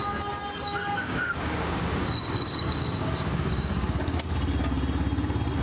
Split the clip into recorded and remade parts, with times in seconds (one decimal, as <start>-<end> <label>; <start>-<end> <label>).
0.0-0.8 recorded; 0.8-4.2 remade; 4.2-5.6 recorded